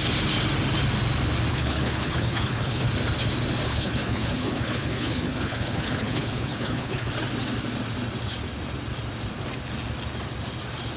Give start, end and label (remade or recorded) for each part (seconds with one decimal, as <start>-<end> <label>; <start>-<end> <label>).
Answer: 0.0-1.5 recorded; 1.5-2.9 remade; 2.9-3.7 recorded; 3.7-7.1 remade; 7.1-11.0 recorded

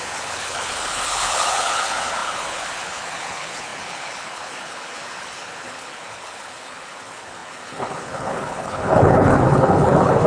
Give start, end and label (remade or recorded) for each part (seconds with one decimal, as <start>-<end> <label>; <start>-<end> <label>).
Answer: 0.0-10.3 remade

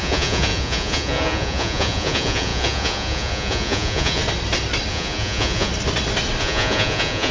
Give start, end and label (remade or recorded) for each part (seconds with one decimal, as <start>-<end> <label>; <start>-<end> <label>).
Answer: 0.0-4.2 remade; 4.2-4.9 recorded; 4.9-5.7 remade; 5.7-6.4 recorded; 6.4-7.3 remade